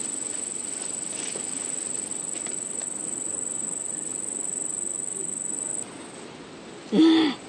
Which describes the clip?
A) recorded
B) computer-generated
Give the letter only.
A